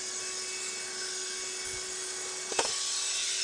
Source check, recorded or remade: recorded